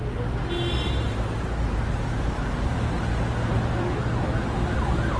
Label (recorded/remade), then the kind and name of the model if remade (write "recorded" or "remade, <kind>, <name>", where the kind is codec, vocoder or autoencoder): recorded